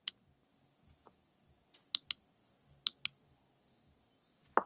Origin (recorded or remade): recorded